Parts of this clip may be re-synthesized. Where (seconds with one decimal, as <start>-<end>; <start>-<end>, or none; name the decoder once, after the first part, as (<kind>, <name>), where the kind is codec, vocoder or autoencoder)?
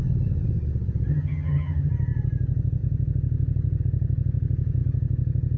1.1-1.9 (vocoder, HiFi-GAN)